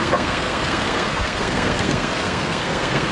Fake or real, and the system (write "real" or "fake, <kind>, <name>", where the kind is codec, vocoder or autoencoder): fake, codec, SNAC